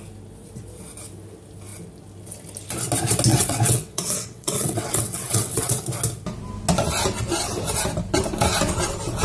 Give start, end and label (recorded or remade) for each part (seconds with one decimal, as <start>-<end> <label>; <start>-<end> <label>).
0.0-3.3 recorded; 3.3-5.8 remade; 5.8-9.2 recorded